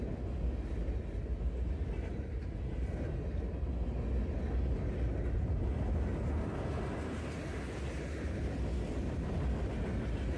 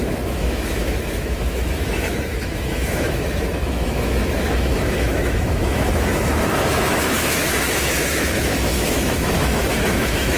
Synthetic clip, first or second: second